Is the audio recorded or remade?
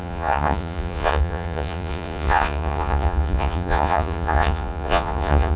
remade